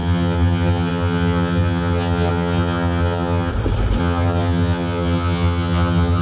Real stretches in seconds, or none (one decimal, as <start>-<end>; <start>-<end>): 3.5-4.0